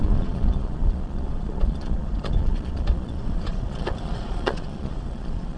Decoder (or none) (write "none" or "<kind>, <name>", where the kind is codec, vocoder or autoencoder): vocoder, Vocos